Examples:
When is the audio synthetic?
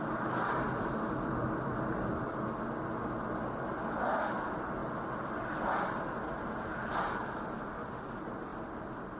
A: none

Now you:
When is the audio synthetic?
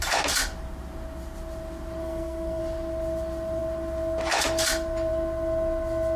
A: 2.0-2.6 (codec, SNAC)